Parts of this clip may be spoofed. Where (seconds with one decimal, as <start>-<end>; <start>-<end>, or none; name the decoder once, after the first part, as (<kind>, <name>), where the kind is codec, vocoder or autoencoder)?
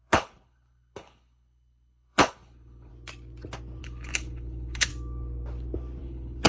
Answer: 0.0-2.9 (codec, HILCodec); 3.8-4.9; 6.0-6.5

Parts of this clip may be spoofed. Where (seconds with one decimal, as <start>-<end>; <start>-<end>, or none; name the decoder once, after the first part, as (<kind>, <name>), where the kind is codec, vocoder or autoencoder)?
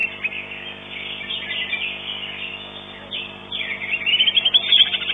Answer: none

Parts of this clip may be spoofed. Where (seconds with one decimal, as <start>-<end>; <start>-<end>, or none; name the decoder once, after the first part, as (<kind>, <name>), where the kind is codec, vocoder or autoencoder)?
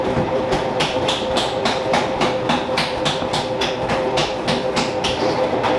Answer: 0.0-4.2 (vocoder, BigVGAN v2); 5.0-5.8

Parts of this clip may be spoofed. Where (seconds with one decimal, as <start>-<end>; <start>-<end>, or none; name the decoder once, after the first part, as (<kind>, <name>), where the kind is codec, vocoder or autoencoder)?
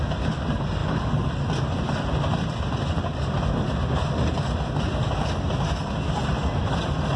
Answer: none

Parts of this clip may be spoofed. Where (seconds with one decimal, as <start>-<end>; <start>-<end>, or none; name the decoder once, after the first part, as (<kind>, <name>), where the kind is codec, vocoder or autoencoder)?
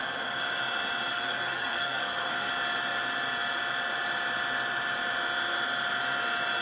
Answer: 1.1-2.5 (codec, SNAC)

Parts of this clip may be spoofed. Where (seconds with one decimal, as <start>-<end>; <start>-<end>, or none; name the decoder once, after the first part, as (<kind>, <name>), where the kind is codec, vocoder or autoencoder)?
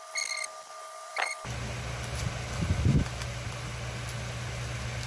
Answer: none